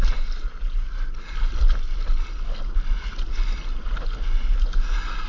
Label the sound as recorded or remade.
recorded